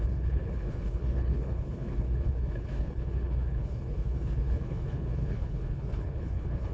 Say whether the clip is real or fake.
fake